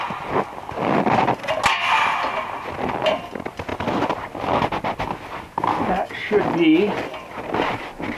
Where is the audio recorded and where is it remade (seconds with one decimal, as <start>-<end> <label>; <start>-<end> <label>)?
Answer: 0.0-8.2 recorded